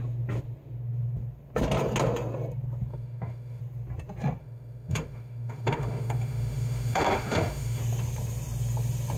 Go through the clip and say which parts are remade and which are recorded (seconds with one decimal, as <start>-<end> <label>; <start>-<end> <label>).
0.0-2.9 recorded; 2.9-3.6 remade; 3.6-4.4 recorded; 4.4-7.8 remade; 7.8-9.2 recorded